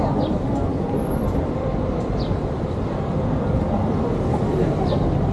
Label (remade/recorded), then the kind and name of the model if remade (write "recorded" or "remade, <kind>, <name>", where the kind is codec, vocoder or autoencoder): remade, vocoder, BigVGAN v2